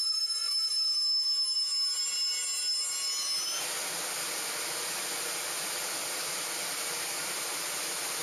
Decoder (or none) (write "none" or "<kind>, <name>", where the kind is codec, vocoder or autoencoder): none